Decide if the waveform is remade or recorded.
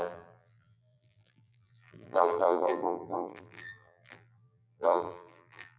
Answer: remade